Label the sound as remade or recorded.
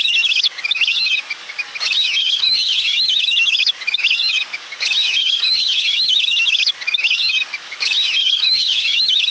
remade